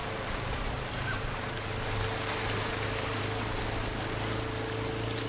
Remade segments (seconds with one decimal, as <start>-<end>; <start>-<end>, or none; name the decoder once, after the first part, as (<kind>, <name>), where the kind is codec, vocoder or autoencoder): none